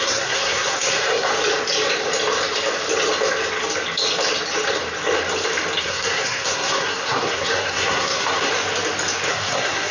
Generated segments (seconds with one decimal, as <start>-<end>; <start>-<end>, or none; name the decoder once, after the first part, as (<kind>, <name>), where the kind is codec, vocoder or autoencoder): 0.0-1.3 (codec, SNAC); 5.8-8.5; 9.3-9.9